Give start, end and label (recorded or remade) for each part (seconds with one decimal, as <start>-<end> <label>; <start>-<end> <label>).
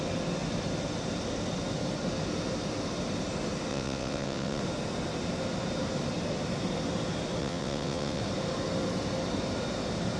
0.0-3.7 recorded; 3.7-4.6 remade; 4.6-7.4 recorded; 7.4-8.2 remade; 8.2-10.2 recorded